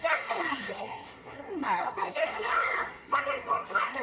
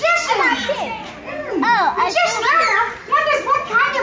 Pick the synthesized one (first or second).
first